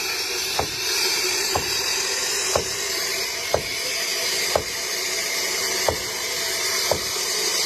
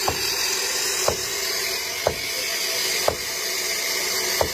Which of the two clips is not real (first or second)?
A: first